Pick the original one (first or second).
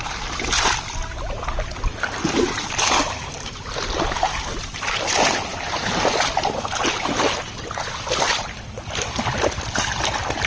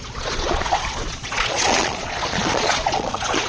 first